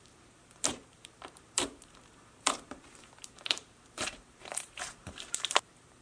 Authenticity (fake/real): fake